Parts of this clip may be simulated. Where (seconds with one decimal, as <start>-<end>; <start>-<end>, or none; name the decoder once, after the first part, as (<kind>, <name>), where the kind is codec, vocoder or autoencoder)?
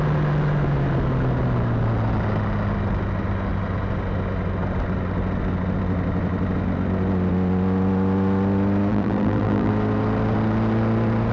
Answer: 8.9-9.7 (vocoder, BigVGAN v2)